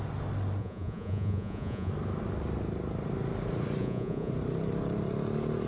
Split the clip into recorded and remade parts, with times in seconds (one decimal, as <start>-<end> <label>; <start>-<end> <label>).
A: 0.0-0.6 recorded; 0.6-1.9 remade; 1.9-3.8 recorded; 3.8-4.3 remade; 4.3-5.7 recorded